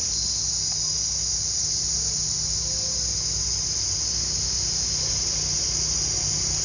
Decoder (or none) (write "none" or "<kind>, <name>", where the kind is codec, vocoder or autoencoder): none